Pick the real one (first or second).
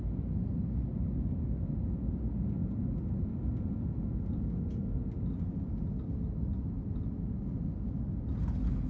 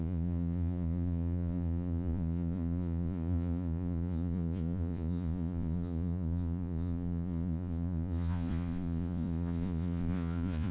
first